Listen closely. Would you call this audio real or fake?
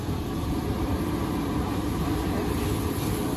real